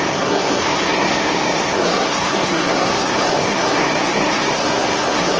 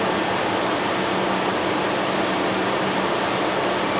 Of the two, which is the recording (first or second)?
second